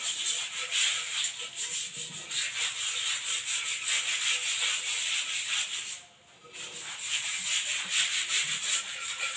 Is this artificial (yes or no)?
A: no